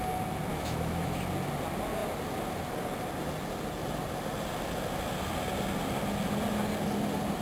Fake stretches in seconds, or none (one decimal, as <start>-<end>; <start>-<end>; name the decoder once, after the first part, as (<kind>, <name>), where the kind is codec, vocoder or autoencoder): 0.5-1.2 (autoencoder, DAC-VAE)